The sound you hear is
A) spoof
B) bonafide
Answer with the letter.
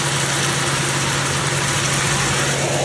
B